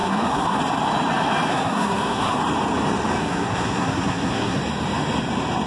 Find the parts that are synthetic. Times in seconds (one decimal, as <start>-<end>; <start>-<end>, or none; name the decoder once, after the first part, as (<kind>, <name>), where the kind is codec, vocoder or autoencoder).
0.0-0.6 (codec, SNAC); 1.5-2.4; 3.2-4.6